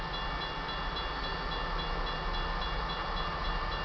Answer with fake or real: real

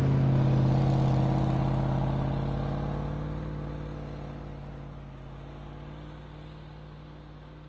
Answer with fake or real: real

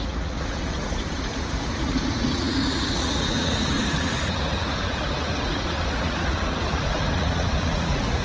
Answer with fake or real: fake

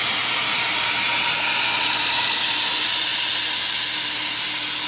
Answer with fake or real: real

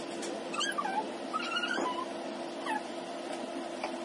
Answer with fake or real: real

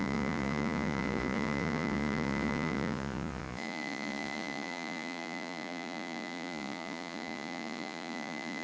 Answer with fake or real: fake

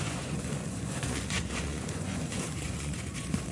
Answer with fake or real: fake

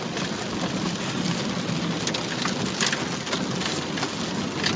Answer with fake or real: real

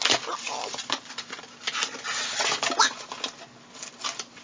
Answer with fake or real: real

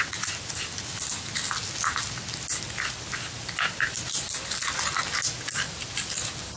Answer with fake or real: real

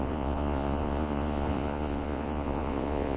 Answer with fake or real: fake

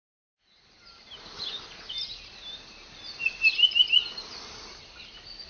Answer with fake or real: real